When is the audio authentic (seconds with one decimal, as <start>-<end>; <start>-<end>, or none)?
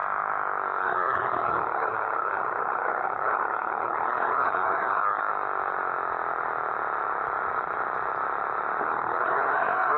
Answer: 0.0-0.8; 5.3-8.8